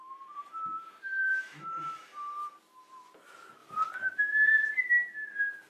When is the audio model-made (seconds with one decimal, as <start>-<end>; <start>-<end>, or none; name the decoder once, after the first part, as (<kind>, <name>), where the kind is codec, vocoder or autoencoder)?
0.0-2.6 (vocoder, BigVGAN v2)